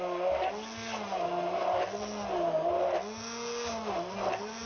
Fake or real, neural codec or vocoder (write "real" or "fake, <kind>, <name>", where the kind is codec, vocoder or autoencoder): real